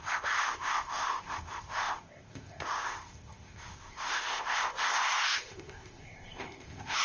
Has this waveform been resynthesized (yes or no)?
yes